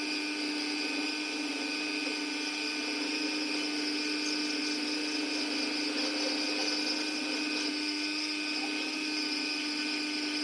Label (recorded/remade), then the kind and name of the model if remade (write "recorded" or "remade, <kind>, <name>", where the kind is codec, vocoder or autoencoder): recorded